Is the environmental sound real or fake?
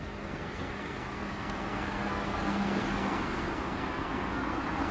fake